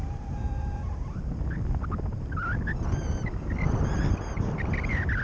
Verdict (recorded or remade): recorded